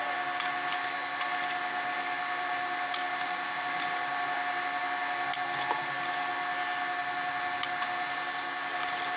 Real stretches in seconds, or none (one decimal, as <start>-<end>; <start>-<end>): 0.0-9.2